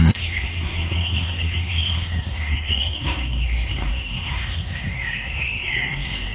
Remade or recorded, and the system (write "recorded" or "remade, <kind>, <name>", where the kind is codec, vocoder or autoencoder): remade, codec, SNAC